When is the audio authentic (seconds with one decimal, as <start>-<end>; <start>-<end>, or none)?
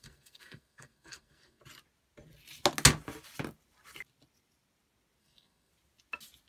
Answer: 1.6-5.2; 5.7-6.5